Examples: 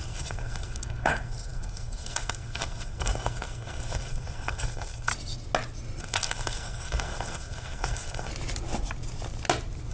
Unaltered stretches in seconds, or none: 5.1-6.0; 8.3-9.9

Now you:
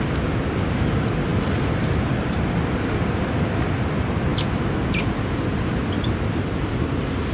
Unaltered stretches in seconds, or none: 0.0-7.3

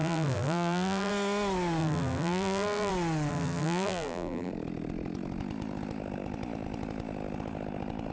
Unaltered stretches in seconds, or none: 1.1-1.8; 2.9-3.3; 4.5-8.1

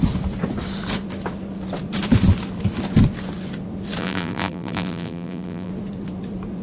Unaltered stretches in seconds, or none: 0.0-4.0; 5.7-6.6

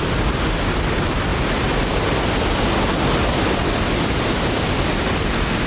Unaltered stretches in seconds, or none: 0.0-5.7

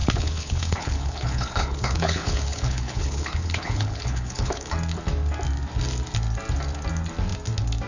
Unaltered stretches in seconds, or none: 4.7-7.9

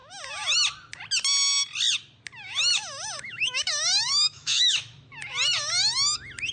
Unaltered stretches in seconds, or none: 0.0-2.7; 5.1-6.5

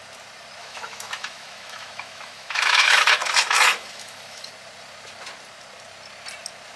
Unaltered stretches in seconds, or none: 0.0-0.6; 4.5-6.8